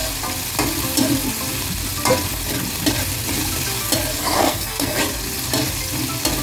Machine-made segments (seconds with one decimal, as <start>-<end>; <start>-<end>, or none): 4.2-5.0